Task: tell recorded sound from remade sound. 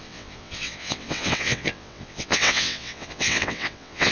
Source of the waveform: remade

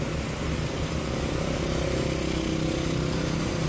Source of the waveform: recorded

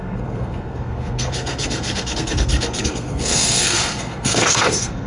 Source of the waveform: remade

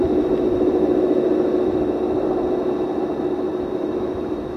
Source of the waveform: recorded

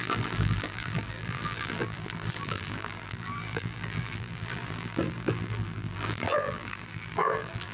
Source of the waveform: remade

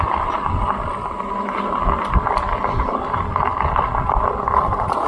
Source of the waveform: recorded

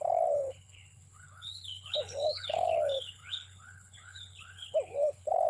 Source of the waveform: remade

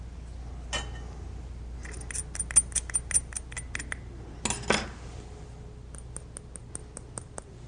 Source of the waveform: recorded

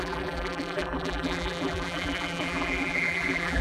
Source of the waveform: remade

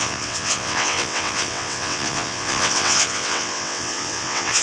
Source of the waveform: remade